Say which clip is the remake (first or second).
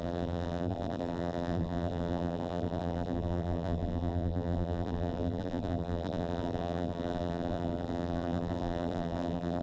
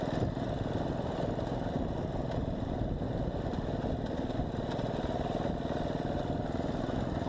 first